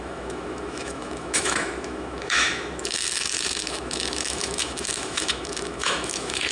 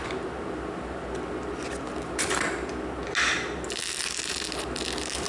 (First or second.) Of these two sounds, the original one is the second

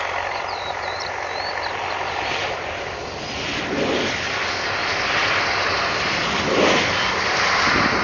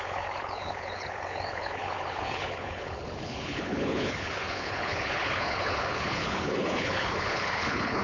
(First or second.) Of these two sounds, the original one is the first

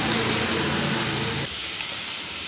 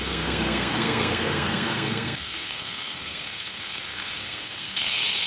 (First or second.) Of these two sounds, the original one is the first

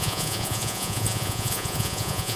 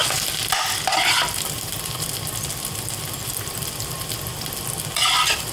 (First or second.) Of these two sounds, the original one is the second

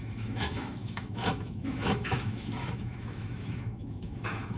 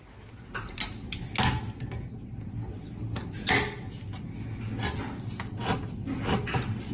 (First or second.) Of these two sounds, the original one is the second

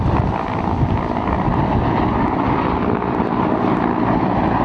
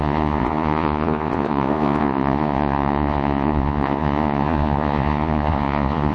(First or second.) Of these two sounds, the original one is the first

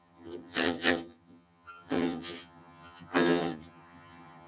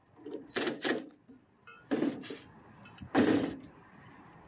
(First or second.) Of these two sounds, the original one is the second